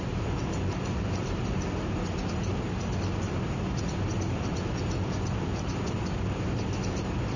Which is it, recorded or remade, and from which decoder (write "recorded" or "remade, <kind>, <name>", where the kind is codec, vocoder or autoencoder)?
recorded